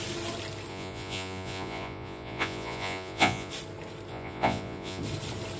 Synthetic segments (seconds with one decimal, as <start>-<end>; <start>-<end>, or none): 0.7-3.5; 4.1-5.0

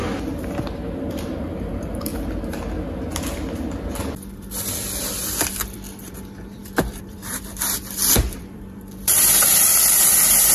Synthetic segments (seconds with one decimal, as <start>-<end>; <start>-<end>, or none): 1.1-2.1; 4.0-10.5

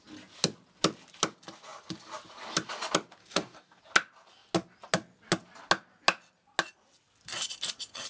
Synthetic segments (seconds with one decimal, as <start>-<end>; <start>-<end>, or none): 3.2-3.8

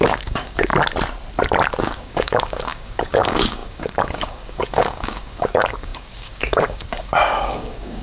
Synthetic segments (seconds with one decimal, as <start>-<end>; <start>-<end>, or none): 0.0-0.7; 1.8-8.0

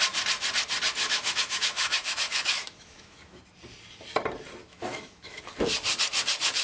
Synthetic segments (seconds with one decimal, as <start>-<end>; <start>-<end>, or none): 1.0-3.4; 4.6-5.4

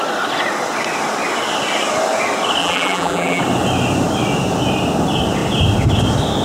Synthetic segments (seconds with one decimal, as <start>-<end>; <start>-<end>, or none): 2.6-3.4

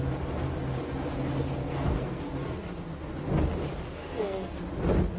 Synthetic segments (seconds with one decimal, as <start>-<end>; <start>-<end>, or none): 1.6-2.2; 4.0-4.6

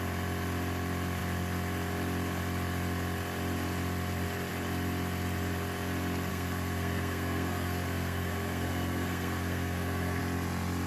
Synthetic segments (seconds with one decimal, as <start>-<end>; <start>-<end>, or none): 6.3-10.2